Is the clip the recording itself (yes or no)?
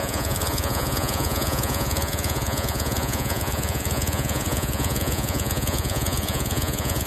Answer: no